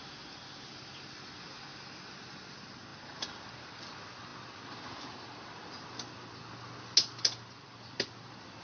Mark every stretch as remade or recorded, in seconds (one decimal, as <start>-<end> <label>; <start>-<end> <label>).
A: 0.0-8.6 recorded